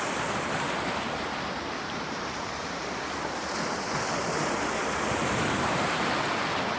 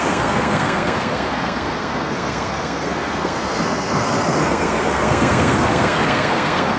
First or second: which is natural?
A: first